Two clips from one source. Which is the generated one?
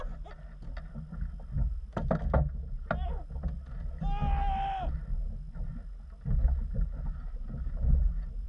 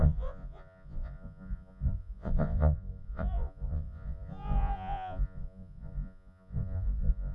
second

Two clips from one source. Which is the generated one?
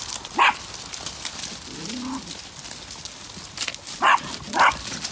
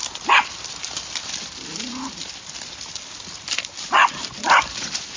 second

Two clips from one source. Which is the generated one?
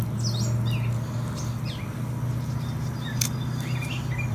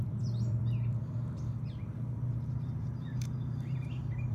second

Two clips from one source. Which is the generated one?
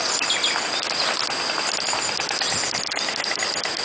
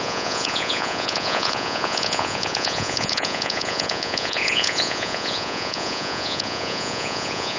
second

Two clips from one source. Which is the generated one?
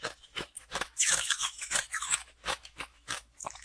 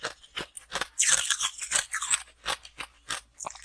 first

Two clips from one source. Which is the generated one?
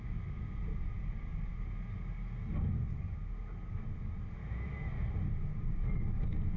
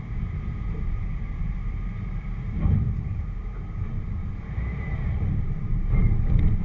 second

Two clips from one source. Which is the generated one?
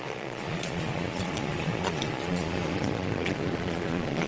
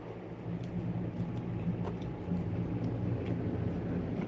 first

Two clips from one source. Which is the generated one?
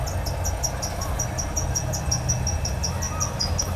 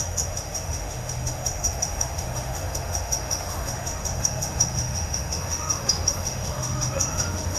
second